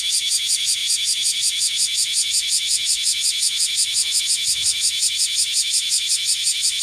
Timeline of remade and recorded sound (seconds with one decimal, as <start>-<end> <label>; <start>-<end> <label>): 0.0-6.8 remade